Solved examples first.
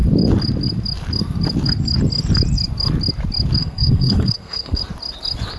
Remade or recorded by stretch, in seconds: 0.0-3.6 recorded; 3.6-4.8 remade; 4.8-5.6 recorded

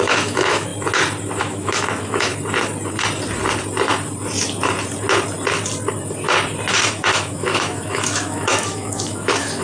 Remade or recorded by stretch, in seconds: 0.0-0.7 remade; 0.7-1.4 recorded; 1.4-2.3 remade; 2.3-6.9 recorded; 6.9-9.6 remade

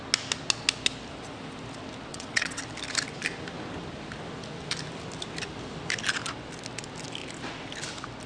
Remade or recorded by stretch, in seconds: 0.0-2.1 recorded; 2.1-2.6 remade; 2.6-8.3 recorded

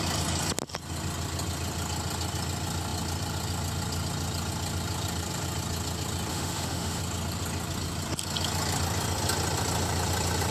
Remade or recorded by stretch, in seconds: 0.0-6.3 recorded; 6.3-7.0 remade; 7.0-10.5 recorded

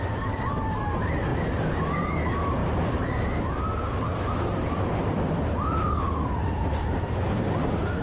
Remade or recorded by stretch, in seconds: 0.0-8.0 recorded

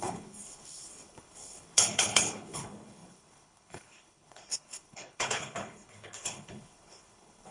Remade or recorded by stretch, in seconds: 0.0-7.5 remade

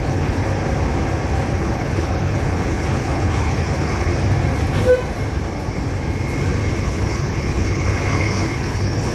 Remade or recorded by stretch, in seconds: 0.0-0.4 remade; 0.4-1.6 recorded; 1.6-4.1 remade; 4.1-6.8 recorded; 6.8-9.1 remade